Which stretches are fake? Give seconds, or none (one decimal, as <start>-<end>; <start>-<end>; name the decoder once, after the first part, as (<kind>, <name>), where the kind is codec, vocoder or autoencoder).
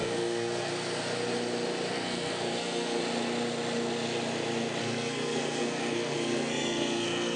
0.0-0.7 (codec, SNAC); 1.9-3.0; 4.8-7.4